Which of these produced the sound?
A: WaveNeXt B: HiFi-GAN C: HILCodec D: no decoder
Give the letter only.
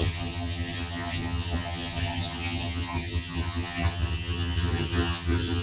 B